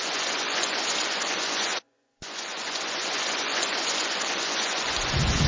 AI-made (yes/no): yes